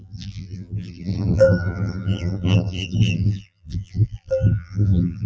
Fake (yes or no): yes